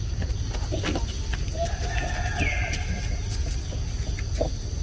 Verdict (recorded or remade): recorded